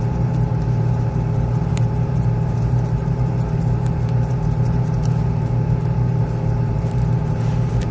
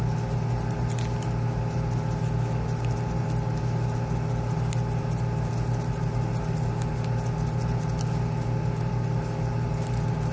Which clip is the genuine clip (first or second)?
second